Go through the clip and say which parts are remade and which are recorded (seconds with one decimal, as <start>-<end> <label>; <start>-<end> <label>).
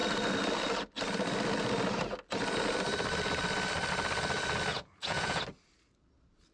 0.0-4.7 recorded; 4.7-5.4 remade; 5.4-6.5 recorded